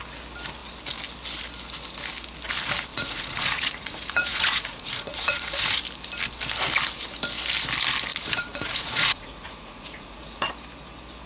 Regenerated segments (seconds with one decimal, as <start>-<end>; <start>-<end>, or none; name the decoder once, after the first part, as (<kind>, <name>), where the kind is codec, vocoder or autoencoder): 2.9-5.8 (vocoder, Vocos); 8.1-10.5